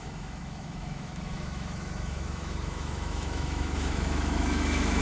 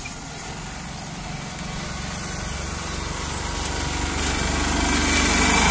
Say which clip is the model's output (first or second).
first